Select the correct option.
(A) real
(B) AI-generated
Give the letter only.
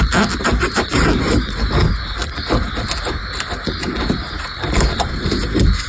A